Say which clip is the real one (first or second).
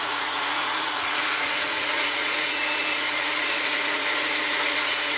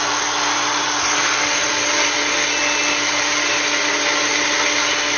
second